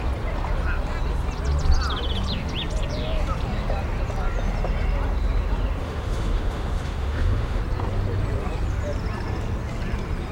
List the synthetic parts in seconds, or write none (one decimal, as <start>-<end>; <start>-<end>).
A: 5.8-7.6